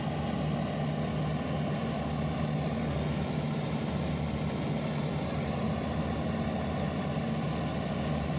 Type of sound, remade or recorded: recorded